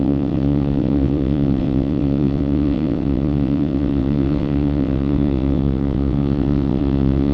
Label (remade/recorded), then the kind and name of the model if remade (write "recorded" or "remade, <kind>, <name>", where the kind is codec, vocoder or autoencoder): remade, vocoder, WaveNeXt